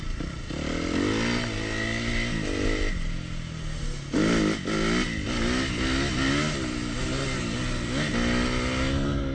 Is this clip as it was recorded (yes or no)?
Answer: yes